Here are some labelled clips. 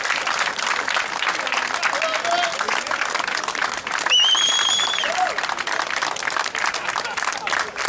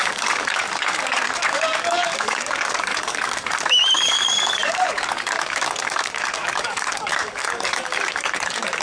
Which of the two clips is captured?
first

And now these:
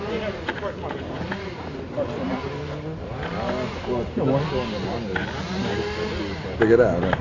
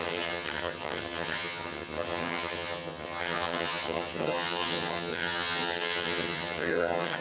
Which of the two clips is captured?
first